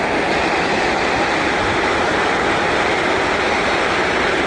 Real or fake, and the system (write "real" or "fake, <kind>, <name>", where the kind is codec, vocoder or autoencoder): real